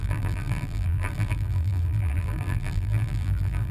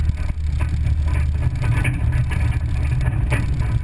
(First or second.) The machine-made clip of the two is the first